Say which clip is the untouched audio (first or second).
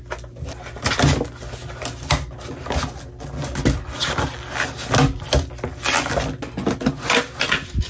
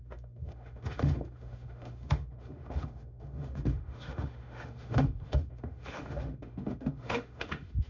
first